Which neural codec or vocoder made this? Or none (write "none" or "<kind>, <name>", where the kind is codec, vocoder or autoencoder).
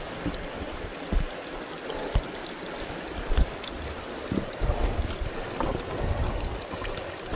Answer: none